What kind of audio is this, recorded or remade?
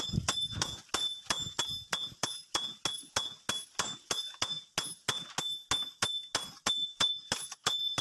recorded